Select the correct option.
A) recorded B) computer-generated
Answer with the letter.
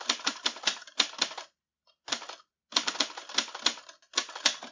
A